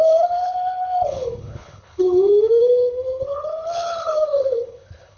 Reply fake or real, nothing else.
fake